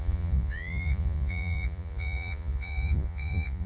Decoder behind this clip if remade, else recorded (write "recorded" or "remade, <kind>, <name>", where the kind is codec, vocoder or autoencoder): remade, vocoder, Vocos